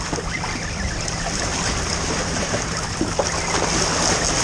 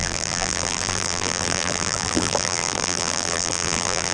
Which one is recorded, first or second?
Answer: first